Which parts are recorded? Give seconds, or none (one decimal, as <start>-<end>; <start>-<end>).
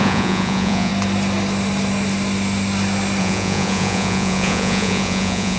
0.9-3.2